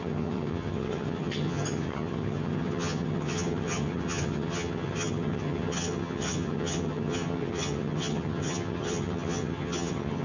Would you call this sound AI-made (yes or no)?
yes